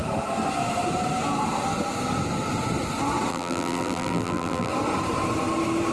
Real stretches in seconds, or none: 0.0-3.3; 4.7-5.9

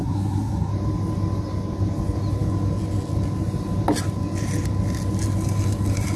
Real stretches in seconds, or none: 0.7-6.2

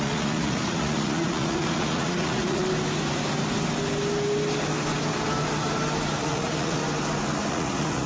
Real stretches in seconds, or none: 2.6-6.2; 6.8-7.5

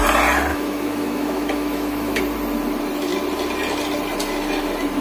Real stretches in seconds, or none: 0.0-0.5; 2.2-5.0

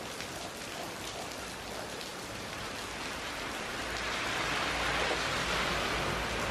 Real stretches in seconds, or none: 0.0-2.1; 2.7-6.5

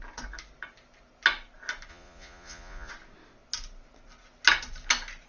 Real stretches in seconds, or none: 0.0-1.9; 2.9-5.3

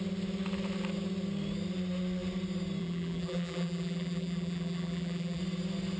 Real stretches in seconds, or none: 0.0-2.8; 5.4-6.0